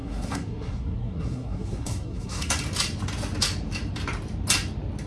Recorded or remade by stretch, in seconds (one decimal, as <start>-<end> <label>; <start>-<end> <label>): 0.0-2.5 remade; 2.5-5.1 recorded